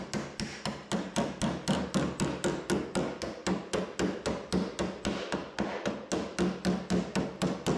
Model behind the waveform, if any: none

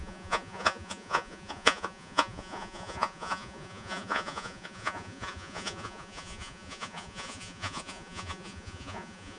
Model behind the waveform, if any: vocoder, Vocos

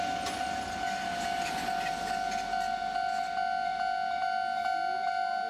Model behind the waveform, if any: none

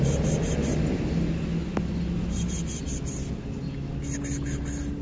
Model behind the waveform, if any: none